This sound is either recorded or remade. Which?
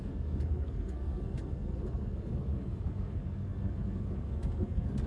remade